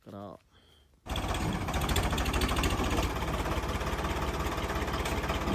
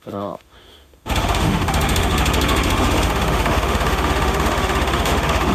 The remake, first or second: second